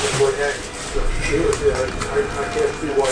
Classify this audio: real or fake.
real